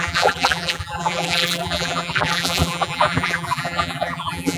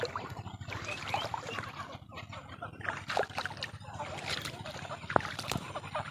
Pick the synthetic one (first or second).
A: first